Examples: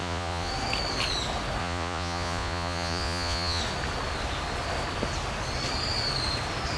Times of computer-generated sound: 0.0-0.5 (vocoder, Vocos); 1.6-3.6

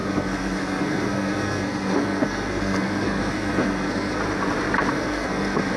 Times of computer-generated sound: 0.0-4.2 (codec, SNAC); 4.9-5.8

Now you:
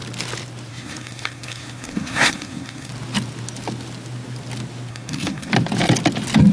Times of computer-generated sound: 0.7-2.9 (codec, SNAC); 4.9-5.5

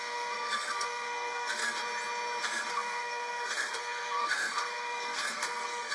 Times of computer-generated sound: 0.0-1.6 (codec, SNAC); 2.7-5.9

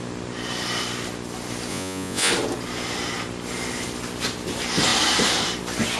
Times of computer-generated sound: 1.7-2.3 (vocoder, Vocos)

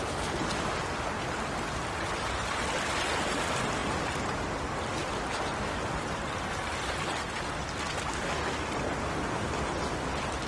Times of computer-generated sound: none

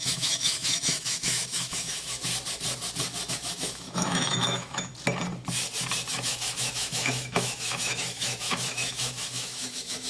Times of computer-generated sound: 0.0-2.3 (autoencoder, DAC-VAE); 3.3-4.9; 6.1-10.1

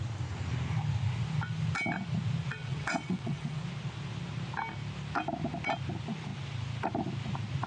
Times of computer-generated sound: 2.5-3.6 (vocoder, WaveNeXt)